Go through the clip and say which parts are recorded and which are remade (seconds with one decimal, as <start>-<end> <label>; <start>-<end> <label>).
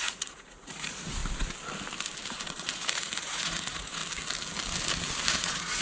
0.0-1.2 remade; 1.2-2.3 recorded; 2.3-4.0 remade; 4.0-5.3 recorded; 5.3-5.8 remade